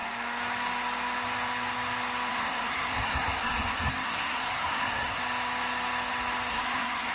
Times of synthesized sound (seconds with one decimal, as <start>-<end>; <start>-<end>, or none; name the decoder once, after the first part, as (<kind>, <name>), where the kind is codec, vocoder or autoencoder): 2.3-5.2 (codec, SNAC); 6.5-7.1